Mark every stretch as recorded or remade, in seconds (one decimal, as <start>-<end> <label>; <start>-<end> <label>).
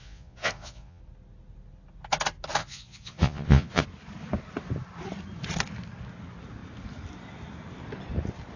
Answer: 0.0-1.0 remade; 1.0-2.6 recorded; 2.6-3.8 remade; 3.8-8.6 recorded